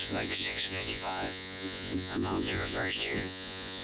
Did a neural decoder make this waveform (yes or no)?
yes